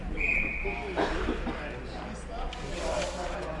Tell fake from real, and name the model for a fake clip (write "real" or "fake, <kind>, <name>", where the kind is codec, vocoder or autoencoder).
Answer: real